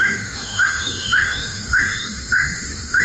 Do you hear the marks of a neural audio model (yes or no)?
yes